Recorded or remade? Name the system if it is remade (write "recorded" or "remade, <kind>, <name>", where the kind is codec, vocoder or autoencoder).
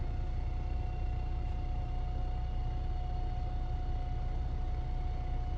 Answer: recorded